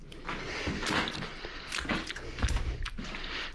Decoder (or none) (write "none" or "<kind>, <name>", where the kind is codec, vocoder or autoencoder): none